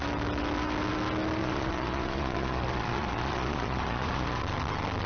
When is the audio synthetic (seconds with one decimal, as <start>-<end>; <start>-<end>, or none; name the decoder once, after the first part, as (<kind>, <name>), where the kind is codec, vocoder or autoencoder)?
1.4-4.4 (vocoder, Vocos)